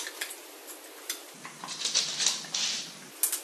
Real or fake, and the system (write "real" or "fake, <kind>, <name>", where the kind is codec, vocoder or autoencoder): real